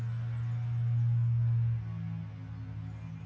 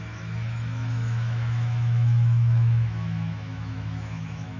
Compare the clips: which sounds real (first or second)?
first